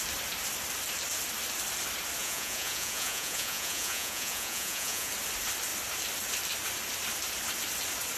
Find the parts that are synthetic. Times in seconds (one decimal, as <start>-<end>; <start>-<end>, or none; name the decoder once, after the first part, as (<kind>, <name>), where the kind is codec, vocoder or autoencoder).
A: 2.2-5.1 (vocoder, Vocos)